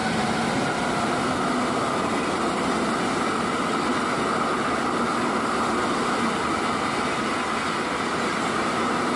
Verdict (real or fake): real